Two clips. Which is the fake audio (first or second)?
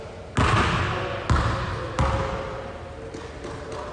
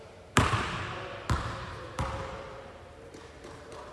second